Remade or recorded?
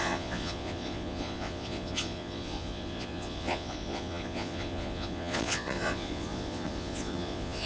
remade